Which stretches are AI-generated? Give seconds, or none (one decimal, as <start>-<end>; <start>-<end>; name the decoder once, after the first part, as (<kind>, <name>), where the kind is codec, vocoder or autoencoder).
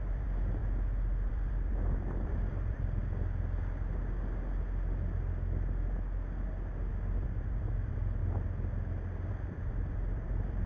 0.0-0.6 (vocoder, BigVGAN v2); 1.3-3.0; 6.9-8.2; 9.3-10.7